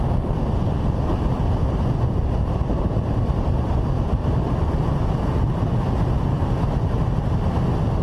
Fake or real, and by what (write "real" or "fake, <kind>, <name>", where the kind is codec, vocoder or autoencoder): real